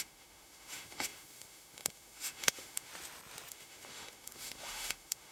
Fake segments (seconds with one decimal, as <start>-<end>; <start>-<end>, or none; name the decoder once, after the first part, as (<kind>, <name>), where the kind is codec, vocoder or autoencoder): 0.0-2.9 (autoencoder, DAC-VAE); 3.5-5.3